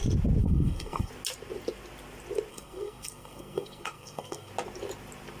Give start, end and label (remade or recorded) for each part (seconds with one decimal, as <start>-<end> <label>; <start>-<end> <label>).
0.0-0.4 recorded; 0.4-1.1 remade; 1.1-2.5 recorded; 2.5-4.5 remade; 4.5-5.4 recorded